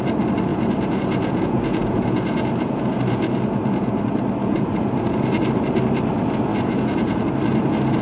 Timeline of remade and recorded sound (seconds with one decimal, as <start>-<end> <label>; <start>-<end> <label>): 0.0-0.5 recorded; 0.5-4.0 remade; 4.0-4.4 recorded; 4.4-5.3 remade; 5.3-6.5 recorded; 6.5-7.2 remade; 7.2-8.0 recorded